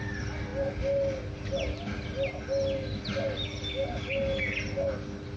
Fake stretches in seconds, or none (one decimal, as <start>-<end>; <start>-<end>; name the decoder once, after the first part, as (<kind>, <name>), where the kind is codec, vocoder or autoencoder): none